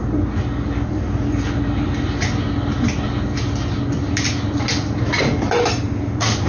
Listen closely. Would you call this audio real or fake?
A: real